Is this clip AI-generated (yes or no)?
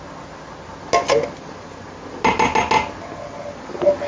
no